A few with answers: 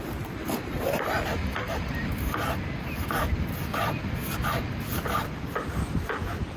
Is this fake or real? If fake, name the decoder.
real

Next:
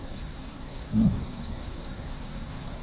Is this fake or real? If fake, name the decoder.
fake, codec, SNAC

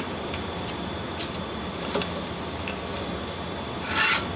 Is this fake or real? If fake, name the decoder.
real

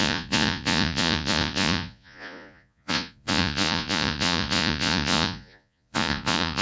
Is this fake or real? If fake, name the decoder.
fake, vocoder, Vocos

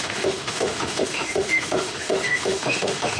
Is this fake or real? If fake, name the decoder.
fake, autoencoder, DAC-VAE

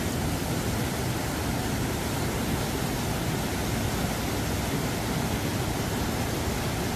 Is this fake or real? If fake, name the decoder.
real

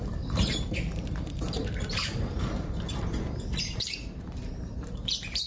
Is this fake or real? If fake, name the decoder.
fake, vocoder, BigVGAN v2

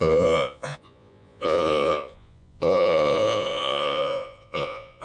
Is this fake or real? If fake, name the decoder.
fake, vocoder, Vocos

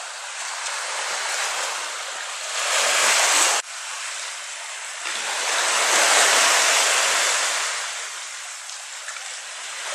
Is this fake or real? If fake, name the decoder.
real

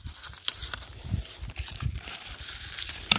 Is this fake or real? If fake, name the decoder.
fake, vocoder, BigVGAN v2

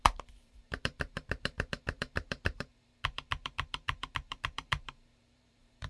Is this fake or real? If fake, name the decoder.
fake, vocoder, BigVGAN v2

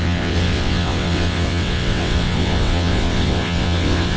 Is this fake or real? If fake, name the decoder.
fake, vocoder, WaveNeXt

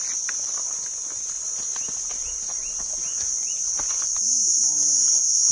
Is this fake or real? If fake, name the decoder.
real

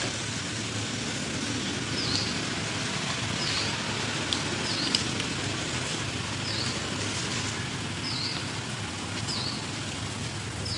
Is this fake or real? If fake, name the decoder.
real